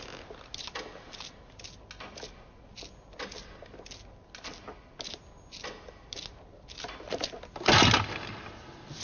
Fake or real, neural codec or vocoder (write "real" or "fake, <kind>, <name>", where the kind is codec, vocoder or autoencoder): real